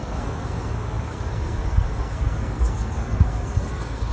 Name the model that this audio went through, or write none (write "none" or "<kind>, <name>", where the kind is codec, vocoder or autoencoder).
codec, SNAC